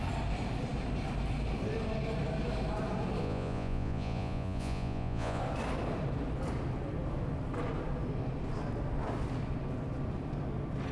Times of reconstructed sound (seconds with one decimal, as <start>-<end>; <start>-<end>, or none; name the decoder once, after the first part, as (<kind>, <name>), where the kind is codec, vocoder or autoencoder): 3.2-5.4 (vocoder, Vocos)